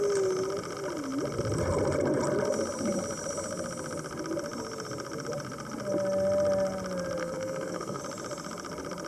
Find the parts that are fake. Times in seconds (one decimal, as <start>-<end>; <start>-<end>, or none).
7.2-8.0